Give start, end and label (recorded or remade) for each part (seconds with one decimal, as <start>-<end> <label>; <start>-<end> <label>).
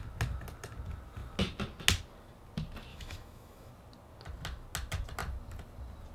0.0-2.9 recorded; 2.9-3.7 remade; 3.7-6.1 recorded